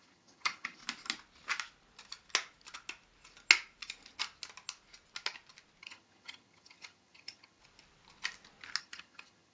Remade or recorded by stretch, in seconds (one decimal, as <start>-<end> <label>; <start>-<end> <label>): 0.0-0.8 remade; 0.8-5.8 recorded; 5.8-7.6 remade; 7.6-8.8 recorded; 8.8-9.5 remade